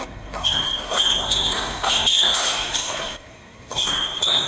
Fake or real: fake